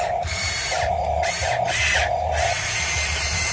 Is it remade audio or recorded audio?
remade